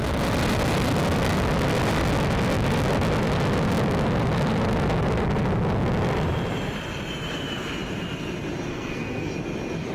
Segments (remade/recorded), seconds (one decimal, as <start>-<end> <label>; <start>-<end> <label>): 0.0-8.7 recorded; 8.7-9.3 remade; 9.3-9.9 recorded